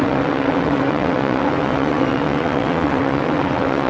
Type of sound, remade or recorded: remade